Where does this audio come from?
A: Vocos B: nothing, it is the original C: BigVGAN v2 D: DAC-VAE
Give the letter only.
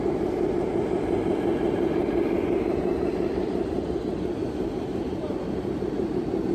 C